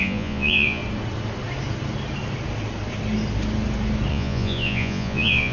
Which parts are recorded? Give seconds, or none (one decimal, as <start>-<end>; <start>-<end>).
0.8-4.1